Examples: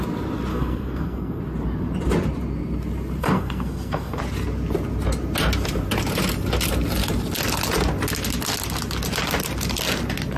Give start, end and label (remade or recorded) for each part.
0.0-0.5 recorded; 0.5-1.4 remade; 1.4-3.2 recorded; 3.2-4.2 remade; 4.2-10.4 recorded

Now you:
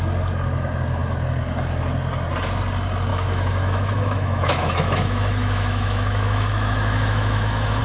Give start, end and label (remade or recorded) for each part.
0.0-3.1 recorded; 3.1-7.8 remade

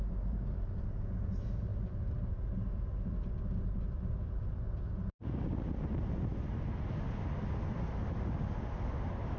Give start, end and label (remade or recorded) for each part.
0.0-9.4 recorded

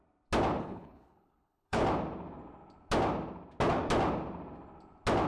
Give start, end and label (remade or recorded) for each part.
0.0-0.6 recorded; 0.6-1.8 remade; 1.8-5.3 recorded

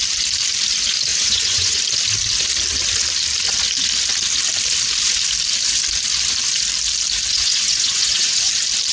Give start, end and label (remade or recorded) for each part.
0.0-1.1 recorded; 1.1-1.8 remade; 1.8-7.3 recorded; 7.3-8.5 remade; 8.5-8.9 recorded

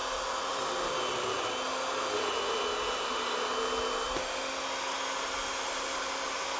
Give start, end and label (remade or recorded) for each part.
0.0-6.6 recorded

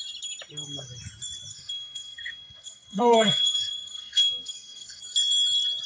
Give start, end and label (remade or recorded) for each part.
0.0-1.5 recorded; 1.5-5.0 remade; 5.0-5.9 recorded